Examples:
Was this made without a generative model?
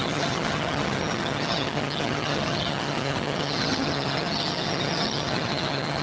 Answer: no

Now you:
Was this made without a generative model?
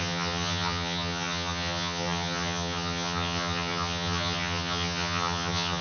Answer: no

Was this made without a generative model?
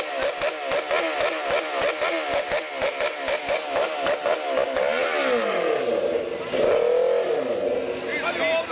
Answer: yes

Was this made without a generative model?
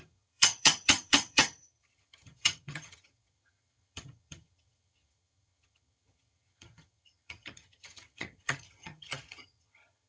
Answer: no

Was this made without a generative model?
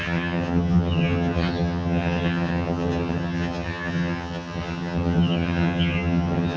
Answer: no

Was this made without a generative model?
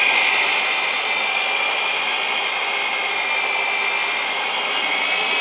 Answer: yes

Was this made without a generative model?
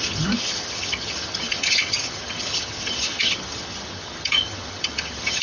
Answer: no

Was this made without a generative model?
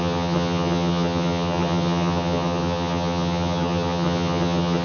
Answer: no